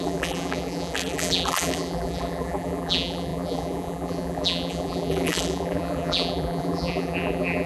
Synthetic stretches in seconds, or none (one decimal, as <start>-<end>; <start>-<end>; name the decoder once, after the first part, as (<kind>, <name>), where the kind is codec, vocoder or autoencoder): 0.0-7.7 (vocoder, BigVGAN v2)